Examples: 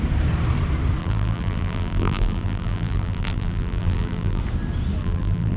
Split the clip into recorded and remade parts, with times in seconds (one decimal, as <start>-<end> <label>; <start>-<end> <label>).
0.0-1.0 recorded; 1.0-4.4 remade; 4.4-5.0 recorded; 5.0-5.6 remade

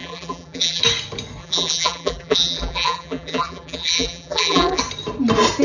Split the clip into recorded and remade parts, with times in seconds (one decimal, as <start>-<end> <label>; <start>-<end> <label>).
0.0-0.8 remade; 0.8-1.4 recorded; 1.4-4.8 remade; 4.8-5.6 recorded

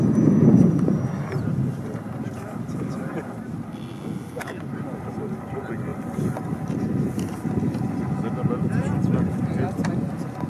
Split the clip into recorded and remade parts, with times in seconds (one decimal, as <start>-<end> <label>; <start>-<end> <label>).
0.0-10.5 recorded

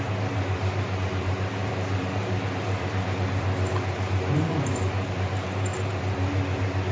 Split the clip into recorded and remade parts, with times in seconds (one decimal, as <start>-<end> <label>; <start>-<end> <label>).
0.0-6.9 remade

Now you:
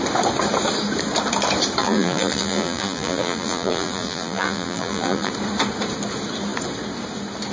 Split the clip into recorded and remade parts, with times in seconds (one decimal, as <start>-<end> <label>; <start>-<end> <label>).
0.0-1.8 recorded; 1.8-5.3 remade; 5.3-7.5 recorded

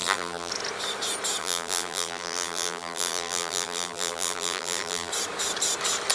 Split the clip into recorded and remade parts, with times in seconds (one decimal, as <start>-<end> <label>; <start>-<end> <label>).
0.0-0.5 remade; 0.5-1.4 recorded; 1.4-5.1 remade; 5.1-6.1 recorded

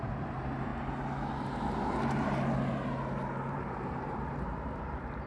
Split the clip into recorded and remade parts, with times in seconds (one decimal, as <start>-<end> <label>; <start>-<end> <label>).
0.0-0.7 remade; 0.7-3.5 recorded; 3.5-5.3 remade